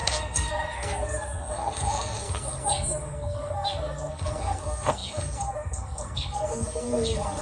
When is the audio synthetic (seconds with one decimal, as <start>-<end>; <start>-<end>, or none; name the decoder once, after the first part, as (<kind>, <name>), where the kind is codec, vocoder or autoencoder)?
0.0-7.4 (codec, SNAC)